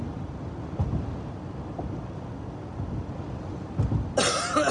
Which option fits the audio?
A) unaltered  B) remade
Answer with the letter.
A